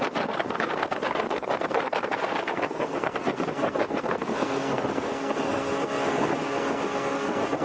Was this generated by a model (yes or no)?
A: yes